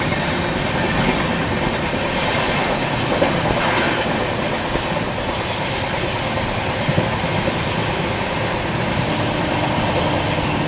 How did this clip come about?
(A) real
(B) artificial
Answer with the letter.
A